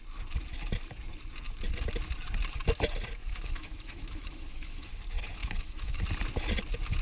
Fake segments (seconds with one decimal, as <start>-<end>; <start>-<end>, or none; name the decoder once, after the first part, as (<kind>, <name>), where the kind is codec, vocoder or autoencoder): 3.2-4.9 (autoencoder, DAC-VAE); 5.4-6.0